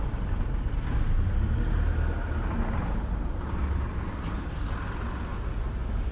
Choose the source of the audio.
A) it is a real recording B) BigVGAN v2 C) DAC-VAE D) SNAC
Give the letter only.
A